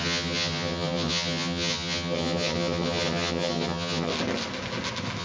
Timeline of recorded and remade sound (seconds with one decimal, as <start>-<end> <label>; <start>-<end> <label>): 0.0-4.1 remade; 4.1-5.2 recorded

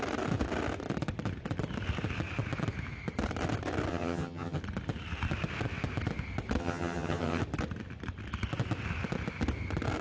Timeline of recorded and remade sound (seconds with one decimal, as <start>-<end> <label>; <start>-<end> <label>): 0.0-3.9 recorded; 3.9-4.6 remade; 4.6-6.6 recorded; 6.6-7.4 remade; 7.4-10.0 recorded

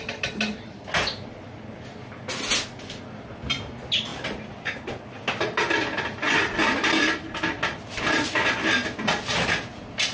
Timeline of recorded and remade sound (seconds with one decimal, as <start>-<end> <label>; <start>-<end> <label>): 0.0-10.1 recorded

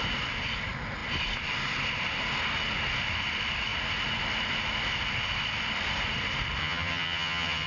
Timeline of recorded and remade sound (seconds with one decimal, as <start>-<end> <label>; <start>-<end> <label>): 0.0-6.6 recorded; 6.6-7.7 remade

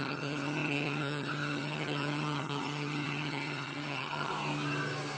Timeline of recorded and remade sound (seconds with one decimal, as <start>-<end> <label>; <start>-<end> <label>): 0.0-4.3 remade; 4.3-5.2 recorded

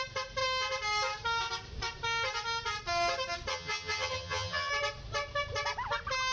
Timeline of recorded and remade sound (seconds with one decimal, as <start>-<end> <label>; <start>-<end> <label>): 0.0-3.5 recorded; 3.5-4.7 remade; 4.7-6.3 recorded

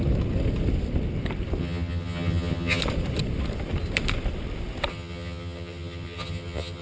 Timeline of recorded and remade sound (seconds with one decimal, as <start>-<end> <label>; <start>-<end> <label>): 0.0-1.6 recorded; 1.6-2.8 remade; 2.8-4.9 recorded; 4.9-6.8 remade